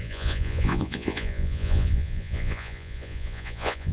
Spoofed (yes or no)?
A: yes